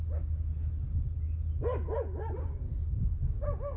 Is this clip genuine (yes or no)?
yes